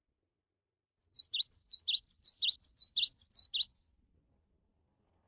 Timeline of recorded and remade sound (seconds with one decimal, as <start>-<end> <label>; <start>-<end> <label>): 0.0-3.1 remade; 3.1-4.5 recorded; 4.5-5.3 remade

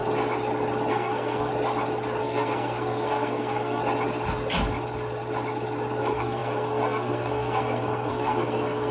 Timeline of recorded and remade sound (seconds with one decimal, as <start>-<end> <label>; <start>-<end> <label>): 0.0-0.9 recorded; 0.9-1.5 remade; 1.5-2.2 recorded; 2.2-3.8 remade; 3.8-6.0 recorded; 6.0-8.9 remade

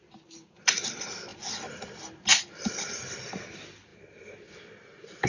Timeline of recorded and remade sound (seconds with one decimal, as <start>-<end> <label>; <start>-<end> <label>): 0.0-5.3 recorded

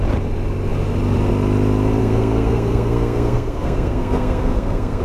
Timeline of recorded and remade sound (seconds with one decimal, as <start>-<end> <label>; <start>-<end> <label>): 0.0-2.0 recorded; 2.0-5.0 remade